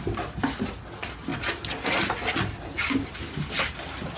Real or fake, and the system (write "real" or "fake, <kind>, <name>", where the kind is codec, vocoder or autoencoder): real